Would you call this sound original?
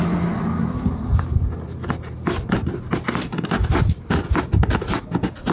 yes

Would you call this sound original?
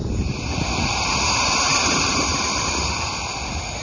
yes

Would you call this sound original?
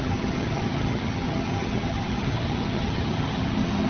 no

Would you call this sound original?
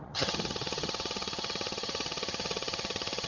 no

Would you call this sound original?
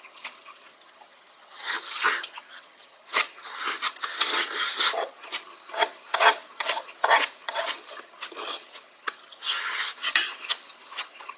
no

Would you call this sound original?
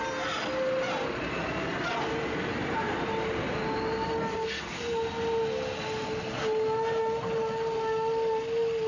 yes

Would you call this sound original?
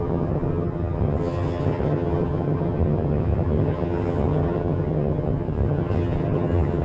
no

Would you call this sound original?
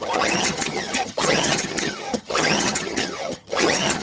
no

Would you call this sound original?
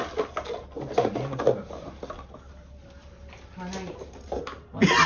yes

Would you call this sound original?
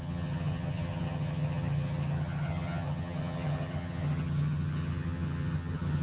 no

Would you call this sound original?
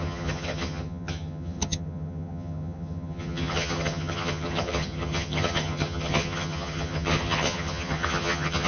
no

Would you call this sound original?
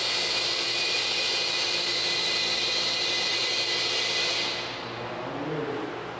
yes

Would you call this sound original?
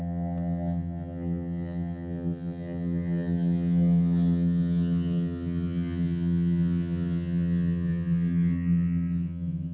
no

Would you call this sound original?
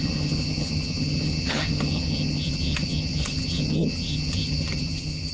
no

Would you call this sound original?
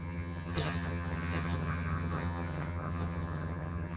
no